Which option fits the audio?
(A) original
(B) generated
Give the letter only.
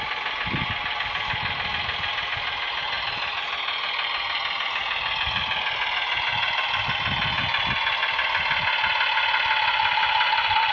A